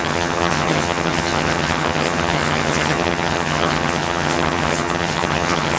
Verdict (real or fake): fake